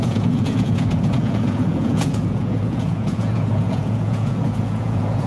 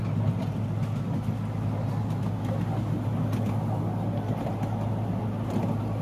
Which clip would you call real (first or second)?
second